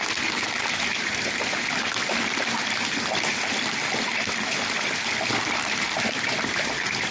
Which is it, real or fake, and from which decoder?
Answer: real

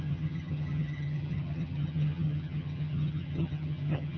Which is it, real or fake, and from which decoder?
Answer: fake, vocoder, HiFi-GAN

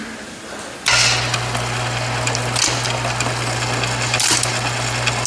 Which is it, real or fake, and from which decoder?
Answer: real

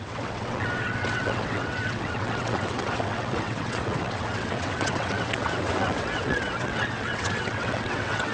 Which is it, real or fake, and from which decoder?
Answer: fake, vocoder, WaveNeXt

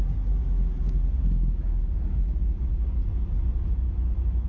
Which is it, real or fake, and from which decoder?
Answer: real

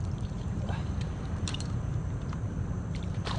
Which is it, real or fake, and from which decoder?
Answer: fake, vocoder, BigVGAN v2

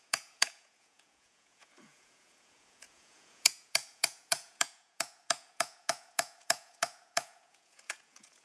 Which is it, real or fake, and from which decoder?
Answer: fake, vocoder, Vocos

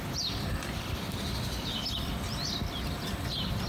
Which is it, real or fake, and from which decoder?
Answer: fake, vocoder, BigVGAN v2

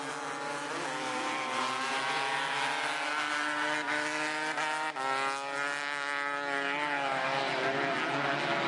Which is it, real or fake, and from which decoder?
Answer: real